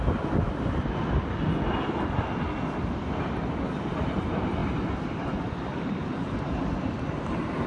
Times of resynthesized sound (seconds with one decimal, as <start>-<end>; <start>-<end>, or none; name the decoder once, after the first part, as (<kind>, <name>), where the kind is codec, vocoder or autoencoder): none